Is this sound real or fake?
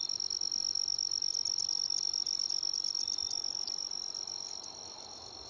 real